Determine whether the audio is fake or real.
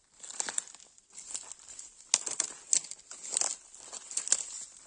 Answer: real